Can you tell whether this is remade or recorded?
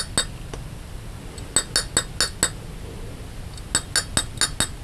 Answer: recorded